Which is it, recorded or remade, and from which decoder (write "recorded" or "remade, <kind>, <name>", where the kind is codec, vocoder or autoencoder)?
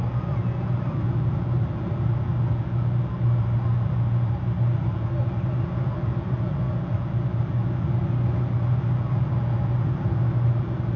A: recorded